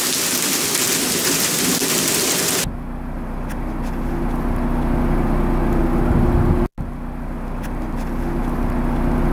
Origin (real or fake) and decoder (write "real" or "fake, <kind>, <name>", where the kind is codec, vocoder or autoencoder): real